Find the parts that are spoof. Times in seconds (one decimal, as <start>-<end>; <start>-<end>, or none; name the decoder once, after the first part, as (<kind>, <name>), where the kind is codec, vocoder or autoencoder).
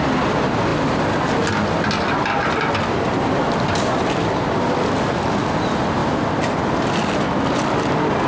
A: none